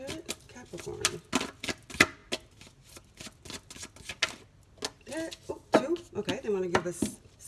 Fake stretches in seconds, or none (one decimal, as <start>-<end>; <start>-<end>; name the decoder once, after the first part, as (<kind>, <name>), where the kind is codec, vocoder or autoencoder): none